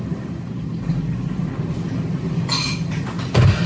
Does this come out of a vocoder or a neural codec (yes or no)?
no